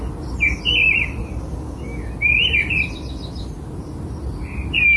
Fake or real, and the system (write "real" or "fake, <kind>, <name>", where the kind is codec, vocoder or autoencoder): real